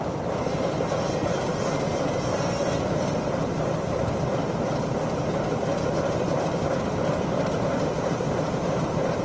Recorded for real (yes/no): no